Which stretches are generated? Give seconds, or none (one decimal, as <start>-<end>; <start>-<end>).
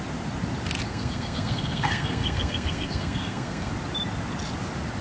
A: 0.9-3.7